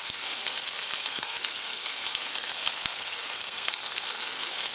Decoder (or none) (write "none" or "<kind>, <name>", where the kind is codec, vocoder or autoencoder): codec, SNAC